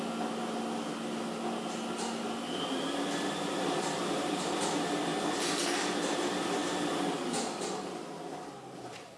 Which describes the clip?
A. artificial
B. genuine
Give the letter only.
B